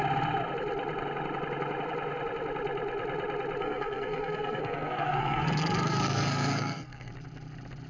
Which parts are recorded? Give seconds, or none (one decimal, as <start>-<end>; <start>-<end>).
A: 0.0-3.6; 7.1-7.9